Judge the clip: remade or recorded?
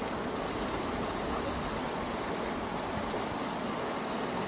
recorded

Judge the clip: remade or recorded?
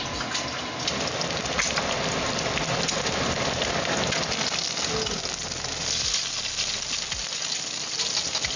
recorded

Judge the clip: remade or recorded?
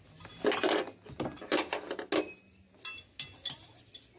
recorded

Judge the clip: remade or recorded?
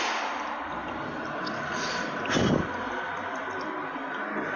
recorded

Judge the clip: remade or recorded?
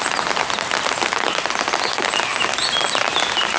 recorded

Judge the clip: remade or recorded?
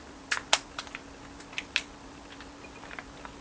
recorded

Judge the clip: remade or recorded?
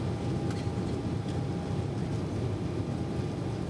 recorded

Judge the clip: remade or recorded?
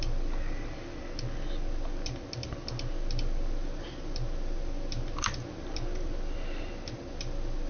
recorded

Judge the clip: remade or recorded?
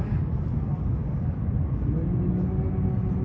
recorded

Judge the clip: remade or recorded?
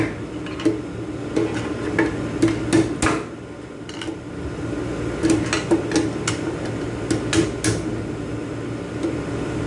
recorded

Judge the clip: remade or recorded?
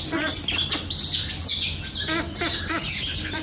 recorded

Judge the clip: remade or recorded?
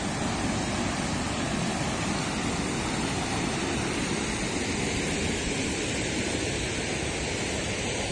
recorded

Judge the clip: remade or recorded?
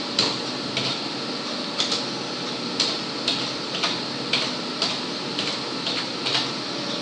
recorded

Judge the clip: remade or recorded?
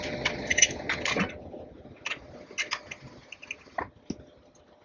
recorded